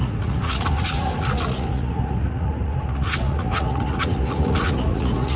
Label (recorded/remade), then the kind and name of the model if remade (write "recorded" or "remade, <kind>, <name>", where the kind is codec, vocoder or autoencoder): remade, vocoder, Vocos